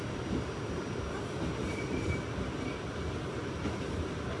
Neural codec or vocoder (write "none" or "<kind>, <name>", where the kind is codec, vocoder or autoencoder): none